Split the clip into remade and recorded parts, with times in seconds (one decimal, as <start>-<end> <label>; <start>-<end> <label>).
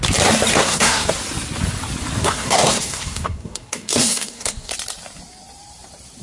0.0-0.5 recorded; 0.5-1.1 remade; 1.1-2.2 recorded; 2.2-4.7 remade; 4.7-6.2 recorded